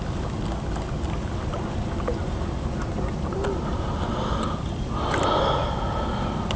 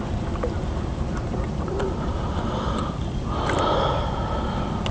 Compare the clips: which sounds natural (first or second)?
first